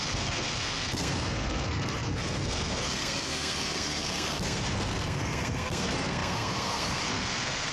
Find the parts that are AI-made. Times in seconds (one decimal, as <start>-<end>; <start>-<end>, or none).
0.0-7.7